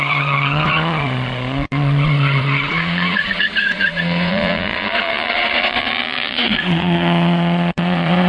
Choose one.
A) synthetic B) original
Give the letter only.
A